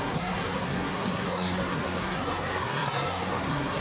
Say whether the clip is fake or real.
fake